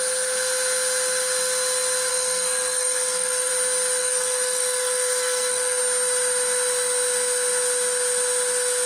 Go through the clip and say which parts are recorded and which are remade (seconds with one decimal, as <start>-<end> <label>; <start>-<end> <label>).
0.0-2.1 recorded; 2.1-3.5 remade; 3.5-4.0 recorded; 4.0-5.8 remade; 5.8-8.9 recorded